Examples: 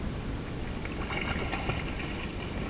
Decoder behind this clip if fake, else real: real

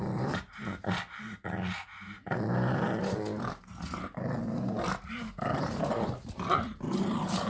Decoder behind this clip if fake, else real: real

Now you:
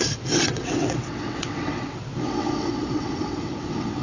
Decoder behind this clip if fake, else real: fake, vocoder, WaveNeXt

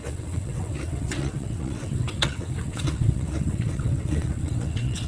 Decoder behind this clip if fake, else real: fake, vocoder, WaveNeXt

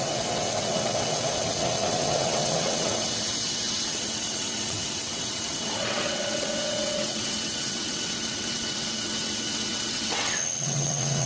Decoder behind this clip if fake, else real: fake, vocoder, WaveNeXt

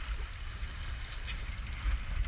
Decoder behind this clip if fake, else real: real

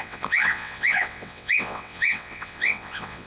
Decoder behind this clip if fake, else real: fake, vocoder, WaveNeXt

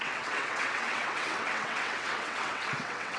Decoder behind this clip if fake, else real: fake, vocoder, WaveNeXt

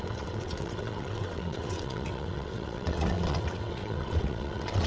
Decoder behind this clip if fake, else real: fake, vocoder, WaveNeXt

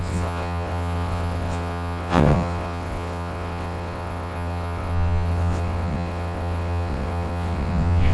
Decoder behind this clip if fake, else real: fake, vocoder, WaveNeXt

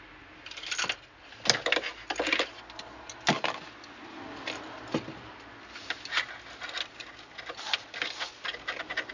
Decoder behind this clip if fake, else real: real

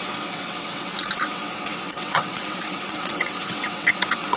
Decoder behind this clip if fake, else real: fake, vocoder, WaveNeXt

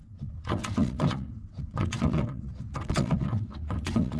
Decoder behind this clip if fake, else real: fake, vocoder, WaveNeXt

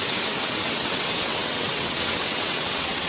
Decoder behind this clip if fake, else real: fake, vocoder, WaveNeXt